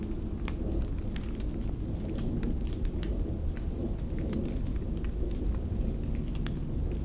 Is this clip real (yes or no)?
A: yes